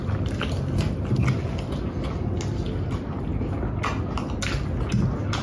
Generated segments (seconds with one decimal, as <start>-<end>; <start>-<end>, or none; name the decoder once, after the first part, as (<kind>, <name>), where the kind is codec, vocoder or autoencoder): none